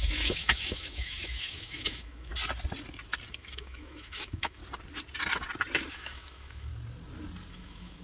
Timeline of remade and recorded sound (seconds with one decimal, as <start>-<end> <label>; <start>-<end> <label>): 0.0-2.3 remade; 2.3-3.3 recorded; 3.3-4.6 remade; 4.6-5.9 recorded; 5.9-6.7 remade; 6.7-7.5 recorded; 7.5-8.0 remade